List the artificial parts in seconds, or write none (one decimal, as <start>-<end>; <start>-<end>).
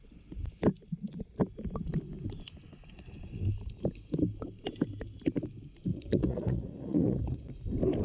5.9-7.5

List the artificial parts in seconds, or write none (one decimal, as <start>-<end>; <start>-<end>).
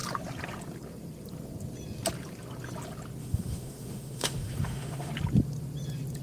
3.2-5.1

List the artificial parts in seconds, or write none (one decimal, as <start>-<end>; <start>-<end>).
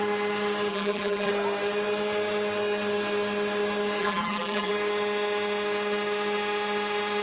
0.7-1.3; 4.0-4.7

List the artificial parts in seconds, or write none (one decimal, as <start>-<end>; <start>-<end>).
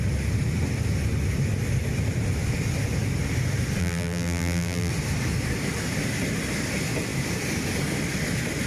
3.8-4.9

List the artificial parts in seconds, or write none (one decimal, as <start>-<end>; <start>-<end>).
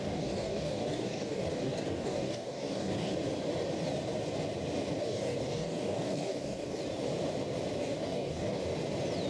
0.0-3.1; 5.0-6.8; 7.8-8.6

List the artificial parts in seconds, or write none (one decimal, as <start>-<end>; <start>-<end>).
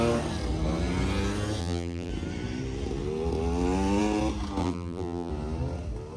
1.6-2.1; 4.6-5.3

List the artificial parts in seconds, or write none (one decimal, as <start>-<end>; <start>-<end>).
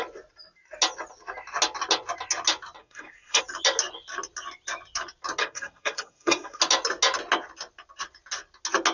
2.8-3.4; 5.4-6.6